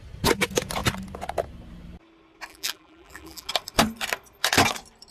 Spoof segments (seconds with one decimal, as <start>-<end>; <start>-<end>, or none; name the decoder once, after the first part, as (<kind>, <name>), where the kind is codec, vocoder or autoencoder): 2.5-3.5 (vocoder, BigVGAN v2)